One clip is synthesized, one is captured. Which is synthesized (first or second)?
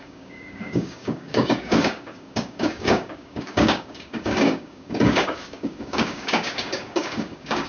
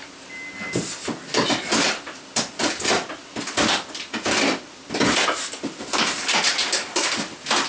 first